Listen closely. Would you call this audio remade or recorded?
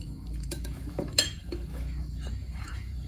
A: remade